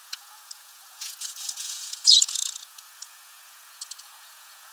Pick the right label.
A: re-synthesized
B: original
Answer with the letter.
A